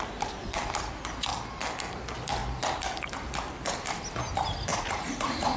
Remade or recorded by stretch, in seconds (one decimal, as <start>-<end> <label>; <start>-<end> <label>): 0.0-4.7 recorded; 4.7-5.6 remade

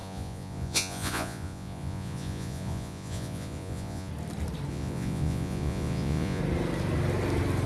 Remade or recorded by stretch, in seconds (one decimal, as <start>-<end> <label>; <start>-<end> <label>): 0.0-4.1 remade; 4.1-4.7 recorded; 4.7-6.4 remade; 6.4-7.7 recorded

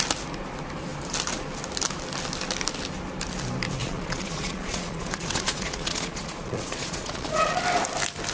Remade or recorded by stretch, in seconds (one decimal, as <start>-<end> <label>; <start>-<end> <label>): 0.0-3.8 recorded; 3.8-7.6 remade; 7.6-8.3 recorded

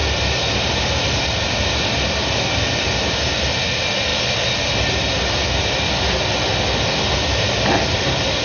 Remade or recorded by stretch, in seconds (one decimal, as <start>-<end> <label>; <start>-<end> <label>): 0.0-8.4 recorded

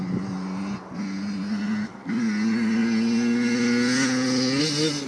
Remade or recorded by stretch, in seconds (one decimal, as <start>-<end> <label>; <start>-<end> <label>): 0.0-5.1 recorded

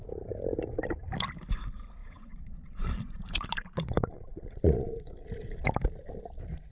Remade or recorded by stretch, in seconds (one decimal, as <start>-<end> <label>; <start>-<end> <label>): 0.0-2.0 recorded; 2.0-5.3 remade; 5.3-6.7 recorded